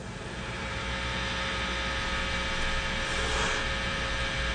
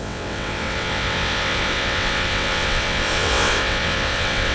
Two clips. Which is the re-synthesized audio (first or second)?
second